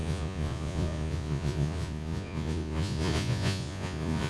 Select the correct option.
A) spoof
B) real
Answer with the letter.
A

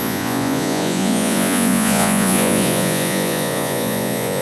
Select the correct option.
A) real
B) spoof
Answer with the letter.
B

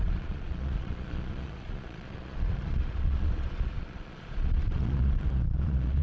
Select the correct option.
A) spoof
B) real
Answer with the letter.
A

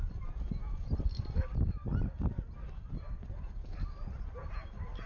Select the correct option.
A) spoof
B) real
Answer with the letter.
B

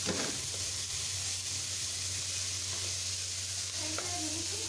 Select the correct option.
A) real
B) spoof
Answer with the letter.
A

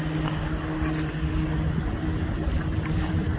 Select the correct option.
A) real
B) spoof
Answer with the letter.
A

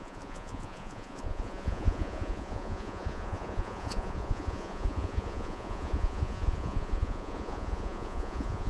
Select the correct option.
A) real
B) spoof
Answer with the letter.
B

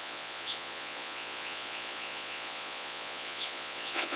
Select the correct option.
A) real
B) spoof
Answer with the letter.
B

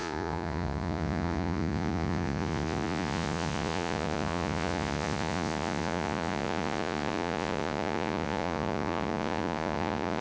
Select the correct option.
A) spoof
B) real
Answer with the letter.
A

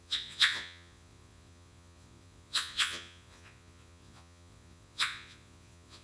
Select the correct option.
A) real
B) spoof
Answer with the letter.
B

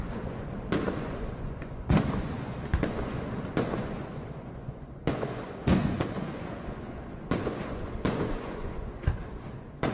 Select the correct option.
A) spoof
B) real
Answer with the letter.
A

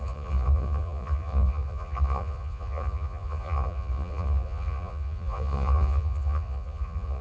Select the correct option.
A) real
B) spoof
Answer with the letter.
B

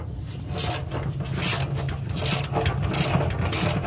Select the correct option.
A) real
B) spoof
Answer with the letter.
A